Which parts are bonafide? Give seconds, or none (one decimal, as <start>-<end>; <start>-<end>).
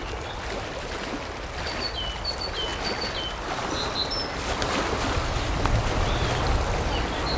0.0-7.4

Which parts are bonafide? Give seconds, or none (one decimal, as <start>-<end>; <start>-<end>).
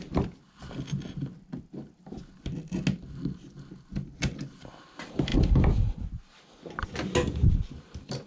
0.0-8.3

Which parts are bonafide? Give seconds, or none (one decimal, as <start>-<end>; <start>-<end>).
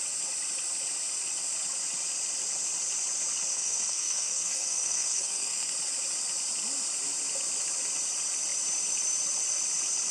0.0-3.5; 5.7-10.1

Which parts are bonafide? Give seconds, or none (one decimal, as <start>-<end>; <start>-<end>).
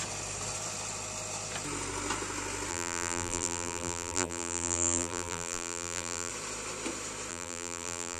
0.0-2.7; 6.3-7.3